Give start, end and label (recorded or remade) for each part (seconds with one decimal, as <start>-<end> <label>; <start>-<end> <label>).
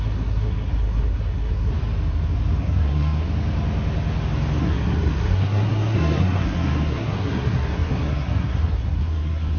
0.0-1.7 remade; 1.7-2.6 recorded; 2.6-3.3 remade; 3.3-4.6 recorded; 4.6-9.6 remade